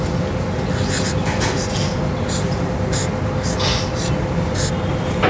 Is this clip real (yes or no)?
yes